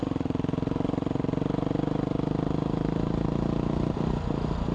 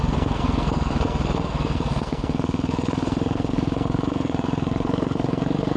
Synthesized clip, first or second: second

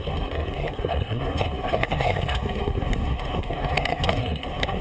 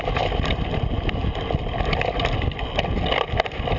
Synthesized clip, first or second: first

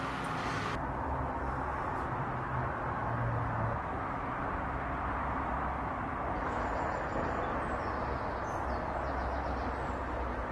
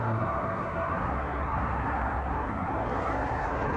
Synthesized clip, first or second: second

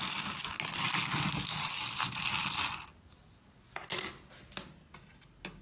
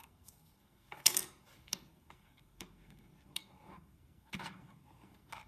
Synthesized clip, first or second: second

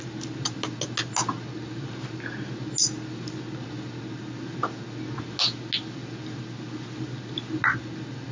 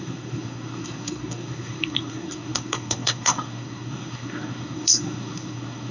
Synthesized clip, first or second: second